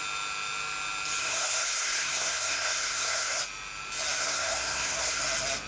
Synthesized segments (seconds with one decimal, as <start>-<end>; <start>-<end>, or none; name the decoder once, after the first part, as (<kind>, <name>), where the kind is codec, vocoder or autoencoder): 1.2-3.4 (codec, SNAC); 4.2-5.2